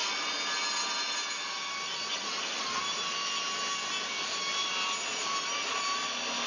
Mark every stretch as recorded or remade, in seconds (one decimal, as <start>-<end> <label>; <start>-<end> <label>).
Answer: 0.0-6.5 recorded